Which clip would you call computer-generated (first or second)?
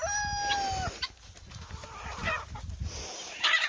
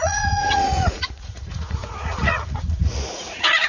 second